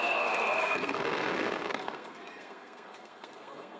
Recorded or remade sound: remade